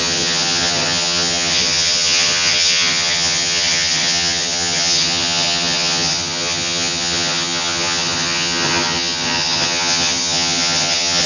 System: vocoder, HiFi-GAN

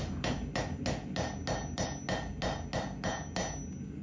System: none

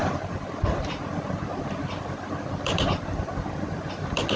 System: none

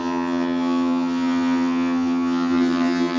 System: vocoder, HiFi-GAN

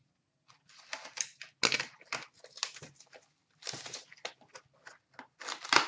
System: none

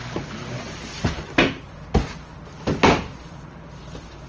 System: none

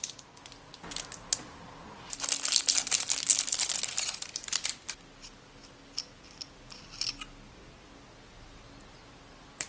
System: none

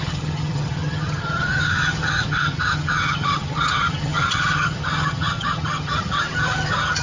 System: vocoder, HiFi-GAN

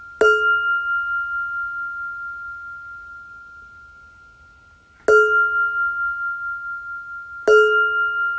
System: none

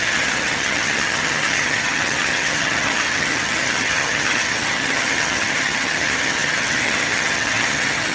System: vocoder, HiFi-GAN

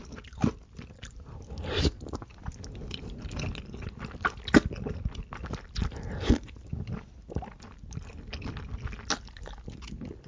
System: none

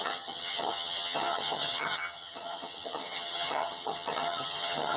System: vocoder, HiFi-GAN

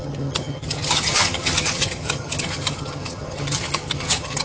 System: vocoder, HiFi-GAN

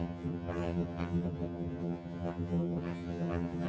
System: vocoder, HiFi-GAN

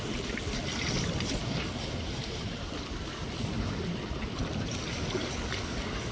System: none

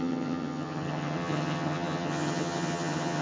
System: vocoder, HiFi-GAN